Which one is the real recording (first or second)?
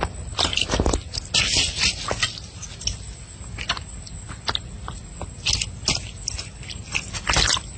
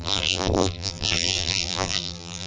first